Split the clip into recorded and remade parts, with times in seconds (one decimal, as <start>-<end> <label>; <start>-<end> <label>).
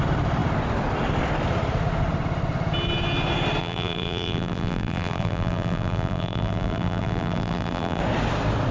0.0-3.6 recorded; 3.6-8.0 remade; 8.0-8.7 recorded